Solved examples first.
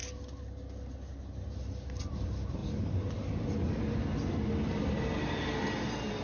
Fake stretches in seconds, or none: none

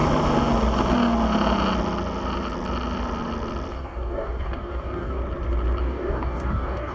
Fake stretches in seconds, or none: 3.7-5.2; 5.8-6.9

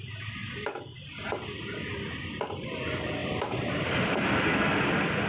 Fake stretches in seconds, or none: none

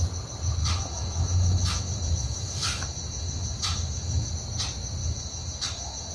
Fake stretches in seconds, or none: 0.6-4.3; 5.0-6.1

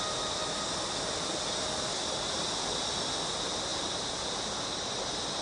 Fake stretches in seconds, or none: none

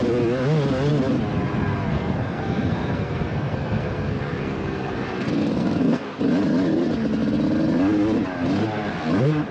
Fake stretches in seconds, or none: 1.9-6.2